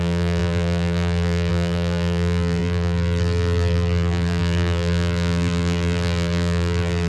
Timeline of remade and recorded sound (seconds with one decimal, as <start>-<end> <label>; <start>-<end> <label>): 0.0-7.1 remade